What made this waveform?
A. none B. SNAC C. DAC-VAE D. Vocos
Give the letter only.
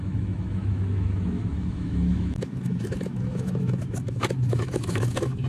C